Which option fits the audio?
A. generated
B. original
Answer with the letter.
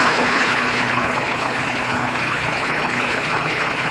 A